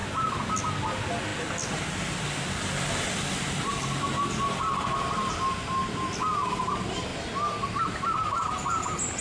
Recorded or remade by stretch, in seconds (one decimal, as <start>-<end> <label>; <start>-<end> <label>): 0.0-1.3 recorded; 1.3-5.3 remade; 5.3-9.2 recorded